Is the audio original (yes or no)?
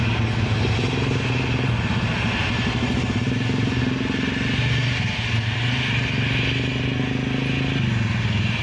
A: yes